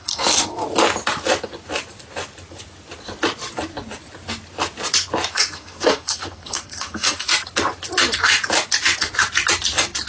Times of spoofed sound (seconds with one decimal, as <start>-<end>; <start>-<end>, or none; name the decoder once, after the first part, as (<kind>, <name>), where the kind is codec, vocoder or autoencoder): 0.0-0.6 (codec, SNAC); 5.3-7.3